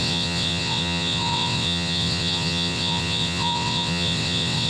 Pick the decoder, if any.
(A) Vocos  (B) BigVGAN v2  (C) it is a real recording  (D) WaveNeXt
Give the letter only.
D